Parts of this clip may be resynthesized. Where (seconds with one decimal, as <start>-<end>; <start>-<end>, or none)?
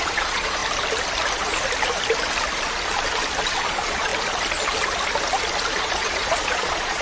0.0-0.6; 3.5-4.1; 5.8-7.0